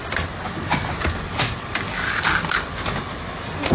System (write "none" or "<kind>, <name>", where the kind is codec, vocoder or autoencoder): none